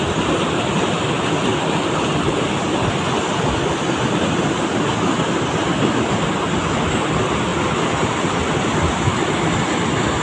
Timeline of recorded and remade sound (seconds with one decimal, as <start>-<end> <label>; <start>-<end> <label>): 0.0-10.2 recorded